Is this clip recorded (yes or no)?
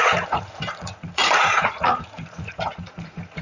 no